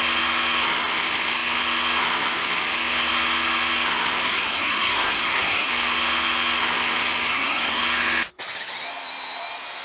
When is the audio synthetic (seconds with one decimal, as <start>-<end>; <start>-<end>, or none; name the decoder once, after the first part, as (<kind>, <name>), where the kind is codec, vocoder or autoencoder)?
4.2-5.7 (codec, SNAC); 7.3-7.8